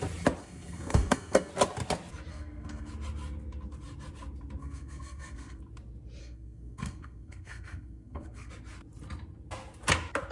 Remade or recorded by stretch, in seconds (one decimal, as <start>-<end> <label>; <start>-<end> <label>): 0.0-0.4 recorded; 0.4-1.5 remade; 1.5-2.3 recorded; 2.3-2.9 remade; 2.9-4.6 recorded; 4.6-5.6 remade; 5.6-6.2 recorded; 6.2-8.5 remade; 8.5-10.3 recorded